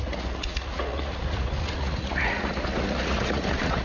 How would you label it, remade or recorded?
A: remade